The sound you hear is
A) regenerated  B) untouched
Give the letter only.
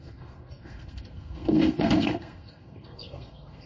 A